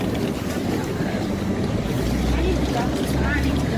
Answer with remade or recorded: recorded